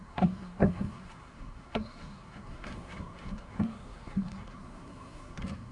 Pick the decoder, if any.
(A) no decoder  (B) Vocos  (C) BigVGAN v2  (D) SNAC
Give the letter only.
D